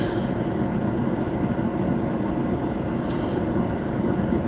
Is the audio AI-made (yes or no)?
no